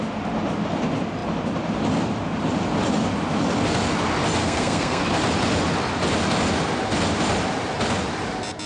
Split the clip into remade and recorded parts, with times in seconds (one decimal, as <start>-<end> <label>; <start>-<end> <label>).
0.0-4.4 recorded; 4.4-5.0 remade; 5.0-8.7 recorded